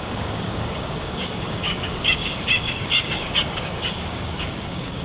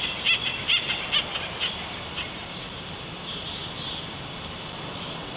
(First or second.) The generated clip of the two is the first